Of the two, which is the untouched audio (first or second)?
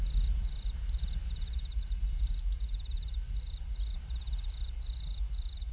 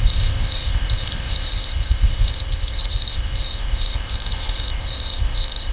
first